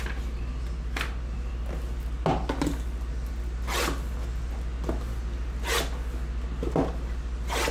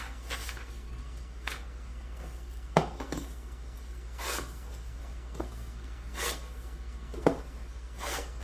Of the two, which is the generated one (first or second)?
second